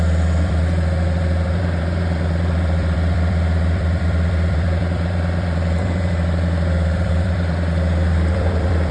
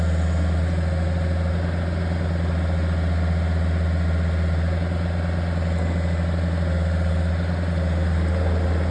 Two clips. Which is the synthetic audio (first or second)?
first